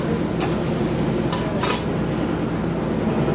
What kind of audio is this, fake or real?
real